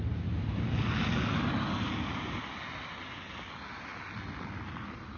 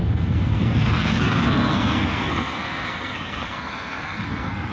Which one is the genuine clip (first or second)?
first